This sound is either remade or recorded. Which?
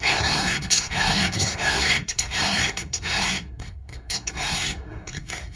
remade